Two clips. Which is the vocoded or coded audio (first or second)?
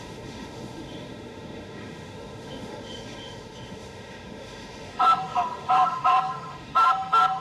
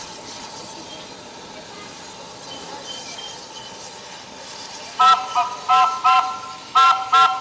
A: first